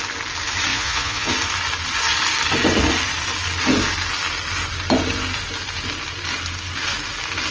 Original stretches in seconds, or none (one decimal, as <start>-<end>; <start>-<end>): 0.0-0.7; 1.3-7.5